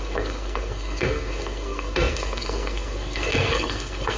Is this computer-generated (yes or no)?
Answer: yes